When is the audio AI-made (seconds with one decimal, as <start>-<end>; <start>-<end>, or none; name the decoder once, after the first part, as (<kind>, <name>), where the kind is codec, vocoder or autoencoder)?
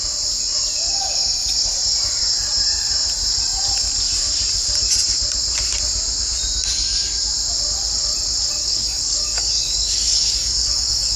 8.6-11.2 (codec, DAC)